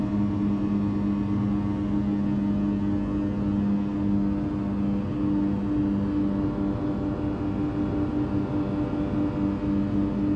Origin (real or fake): real